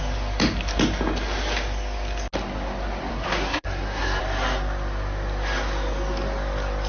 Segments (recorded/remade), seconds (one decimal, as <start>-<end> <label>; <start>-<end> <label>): 0.0-3.1 recorded; 3.1-4.2 remade; 4.2-6.9 recorded

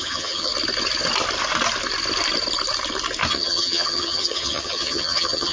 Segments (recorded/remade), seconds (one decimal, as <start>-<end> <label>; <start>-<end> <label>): 0.0-0.5 remade; 0.5-3.3 recorded; 3.3-5.5 remade

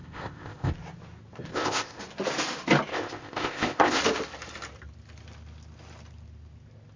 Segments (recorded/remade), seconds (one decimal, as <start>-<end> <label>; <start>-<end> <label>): 0.0-0.7 remade; 0.7-1.5 recorded; 1.5-2.0 remade; 2.0-2.9 recorded; 2.9-4.0 remade; 4.0-7.0 recorded